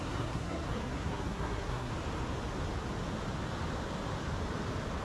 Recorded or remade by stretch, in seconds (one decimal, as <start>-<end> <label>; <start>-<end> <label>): 0.0-1.9 remade; 1.9-5.0 recorded